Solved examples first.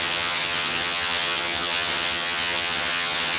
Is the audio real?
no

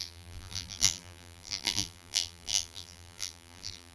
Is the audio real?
no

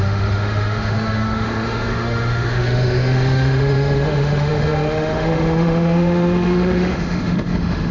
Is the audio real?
no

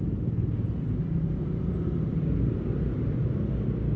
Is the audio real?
yes